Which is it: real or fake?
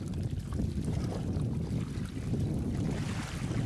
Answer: real